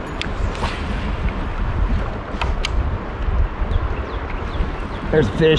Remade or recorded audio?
recorded